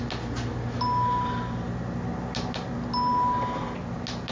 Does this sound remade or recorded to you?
recorded